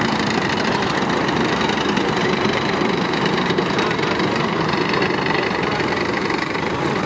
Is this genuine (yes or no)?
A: no